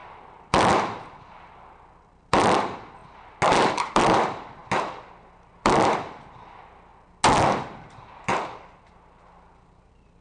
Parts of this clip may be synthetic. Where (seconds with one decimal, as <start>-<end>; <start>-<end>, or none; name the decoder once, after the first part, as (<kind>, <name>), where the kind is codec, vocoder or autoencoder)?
0.0-3.0 (vocoder, BigVGAN v2); 3.9-4.6; 5.5-6.9; 7.4-10.2